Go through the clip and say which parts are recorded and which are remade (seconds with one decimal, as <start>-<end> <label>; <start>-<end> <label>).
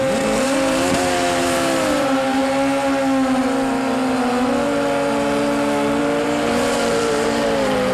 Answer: 0.0-2.4 remade; 2.4-6.0 recorded; 6.0-7.9 remade